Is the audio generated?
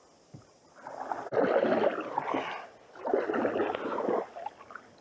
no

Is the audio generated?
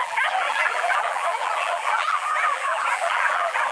yes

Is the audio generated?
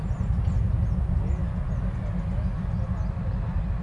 no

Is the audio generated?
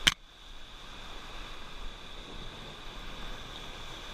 no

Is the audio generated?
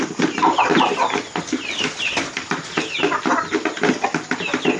no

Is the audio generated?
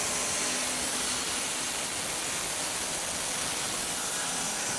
no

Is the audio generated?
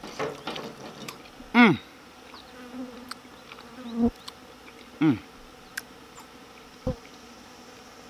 no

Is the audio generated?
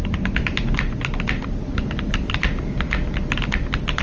no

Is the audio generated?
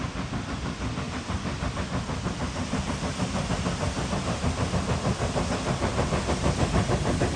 no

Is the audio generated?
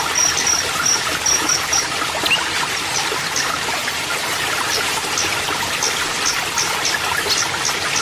no